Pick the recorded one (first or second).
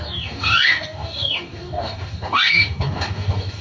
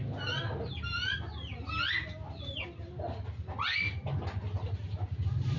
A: second